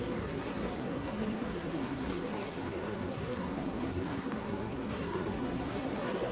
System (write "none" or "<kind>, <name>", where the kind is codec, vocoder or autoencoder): codec, SNAC